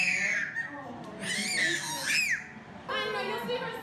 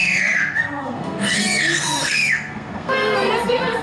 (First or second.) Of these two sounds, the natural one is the first